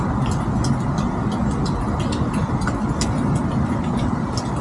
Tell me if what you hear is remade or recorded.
recorded